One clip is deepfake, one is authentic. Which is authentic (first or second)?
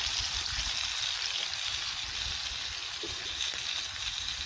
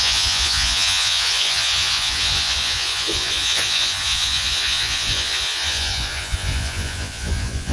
first